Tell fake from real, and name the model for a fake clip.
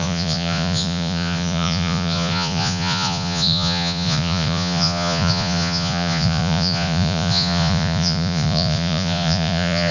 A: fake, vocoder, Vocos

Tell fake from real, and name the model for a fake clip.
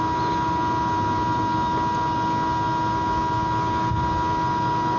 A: real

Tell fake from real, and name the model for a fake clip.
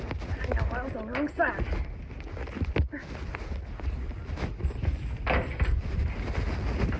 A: real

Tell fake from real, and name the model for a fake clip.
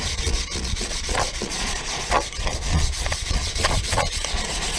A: fake, vocoder, Vocos